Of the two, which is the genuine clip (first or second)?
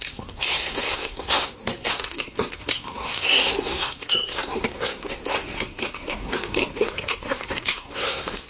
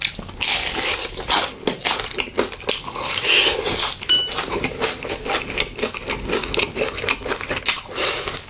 second